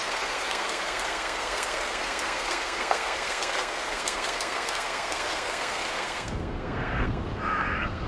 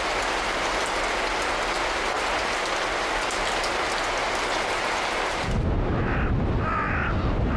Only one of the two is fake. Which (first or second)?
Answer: first